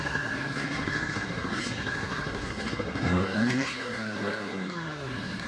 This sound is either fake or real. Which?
fake